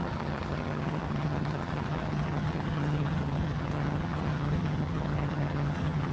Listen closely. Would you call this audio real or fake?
fake